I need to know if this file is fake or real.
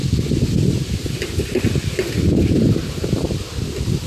real